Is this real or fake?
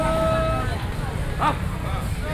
real